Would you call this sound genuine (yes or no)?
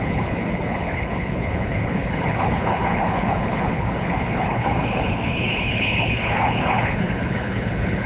no